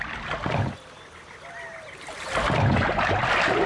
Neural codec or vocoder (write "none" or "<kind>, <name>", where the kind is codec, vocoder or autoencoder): none